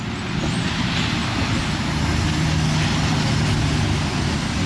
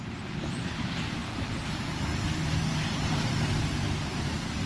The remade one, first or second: second